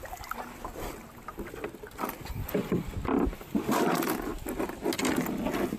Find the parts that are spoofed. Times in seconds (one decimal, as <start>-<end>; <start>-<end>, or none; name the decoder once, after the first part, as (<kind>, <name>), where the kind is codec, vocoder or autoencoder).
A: none